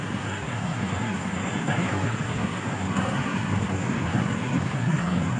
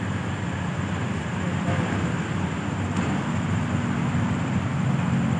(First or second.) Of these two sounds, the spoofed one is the first